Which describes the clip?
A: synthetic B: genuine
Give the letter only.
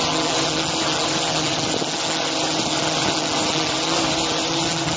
B